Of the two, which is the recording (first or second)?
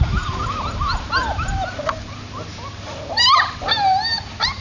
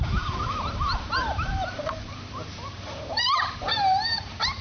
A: first